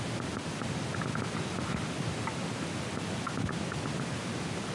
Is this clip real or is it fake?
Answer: real